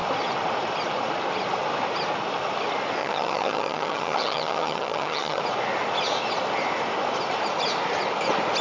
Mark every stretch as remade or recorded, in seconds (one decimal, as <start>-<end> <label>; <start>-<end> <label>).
0.0-3.0 recorded; 3.0-5.4 remade; 5.4-8.6 recorded

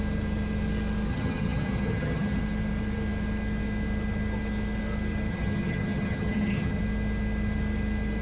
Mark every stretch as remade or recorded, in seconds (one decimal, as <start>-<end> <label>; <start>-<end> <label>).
0.0-1.1 recorded; 1.1-2.4 remade; 2.4-5.3 recorded; 5.3-6.8 remade; 6.8-8.2 recorded

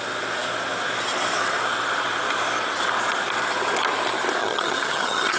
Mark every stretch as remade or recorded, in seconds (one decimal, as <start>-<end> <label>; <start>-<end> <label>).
0.0-4.4 recorded; 4.4-5.4 remade

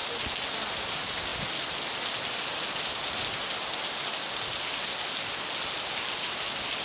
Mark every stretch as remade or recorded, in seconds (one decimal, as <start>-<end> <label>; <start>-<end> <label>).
0.0-6.8 recorded